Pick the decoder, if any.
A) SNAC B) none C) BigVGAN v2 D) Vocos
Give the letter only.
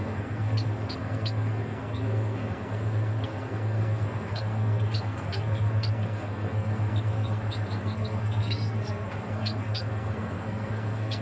A